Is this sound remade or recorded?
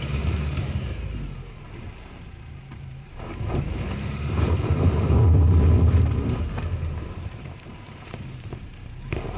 remade